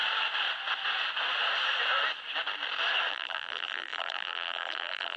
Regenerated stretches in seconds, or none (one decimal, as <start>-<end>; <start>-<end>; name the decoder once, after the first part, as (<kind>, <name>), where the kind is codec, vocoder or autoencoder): 3.1-5.2 (vocoder, BigVGAN v2)